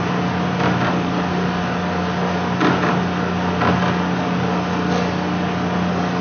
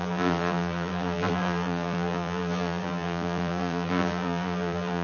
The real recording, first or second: first